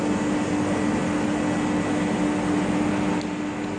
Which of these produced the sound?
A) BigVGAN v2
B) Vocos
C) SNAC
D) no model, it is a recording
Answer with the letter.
D